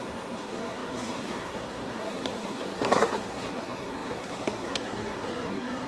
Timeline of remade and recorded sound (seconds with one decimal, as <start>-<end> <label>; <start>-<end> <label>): 0.0-5.9 remade